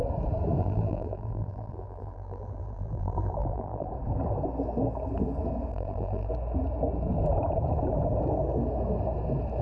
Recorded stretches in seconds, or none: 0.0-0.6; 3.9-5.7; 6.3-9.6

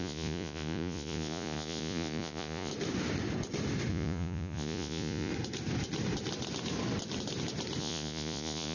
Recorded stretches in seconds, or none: 2.7-3.9; 5.3-7.8

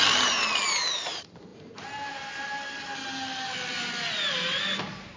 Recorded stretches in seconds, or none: 0.0-5.2

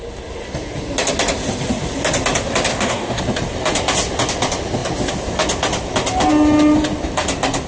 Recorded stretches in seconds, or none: 0.0-2.7; 3.2-7.7

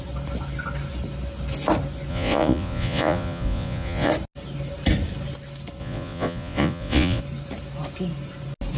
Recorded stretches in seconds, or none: 0.0-2.1; 4.1-5.8; 7.2-8.8

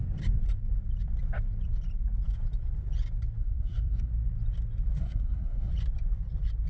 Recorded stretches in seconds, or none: 0.0-3.4; 4.1-5.0; 5.7-6.7

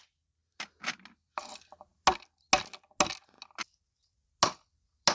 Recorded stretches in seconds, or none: 0.0-5.1

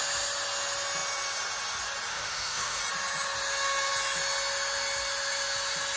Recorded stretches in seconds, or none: 0.0-2.1; 2.8-6.0